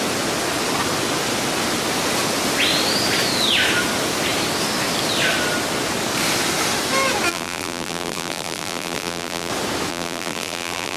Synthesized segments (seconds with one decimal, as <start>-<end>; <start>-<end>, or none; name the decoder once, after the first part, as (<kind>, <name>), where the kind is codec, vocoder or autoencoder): 7.3-9.5 (vocoder, BigVGAN v2); 9.9-11.0